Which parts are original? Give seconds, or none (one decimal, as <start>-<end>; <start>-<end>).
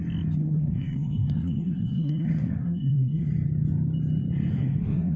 0.0-0.4; 3.3-4.5